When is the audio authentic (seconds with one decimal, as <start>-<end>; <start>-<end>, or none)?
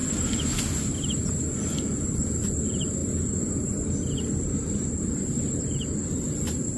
2.6-3.0; 5.6-6.8